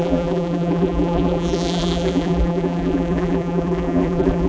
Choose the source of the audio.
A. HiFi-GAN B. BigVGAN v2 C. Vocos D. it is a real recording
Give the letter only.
B